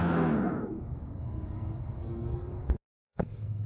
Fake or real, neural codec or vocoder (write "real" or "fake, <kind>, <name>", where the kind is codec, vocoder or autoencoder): fake, codec, SNAC